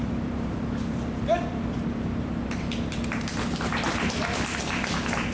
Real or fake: fake